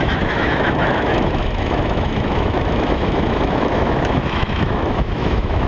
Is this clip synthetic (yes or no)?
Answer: yes